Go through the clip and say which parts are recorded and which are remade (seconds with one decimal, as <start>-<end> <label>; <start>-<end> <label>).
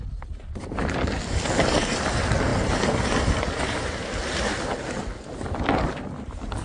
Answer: 0.0-6.6 recorded